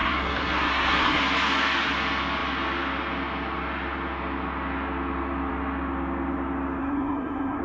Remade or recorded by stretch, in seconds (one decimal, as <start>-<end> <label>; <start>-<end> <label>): 0.0-1.2 remade; 1.2-6.8 recorded; 6.8-7.6 remade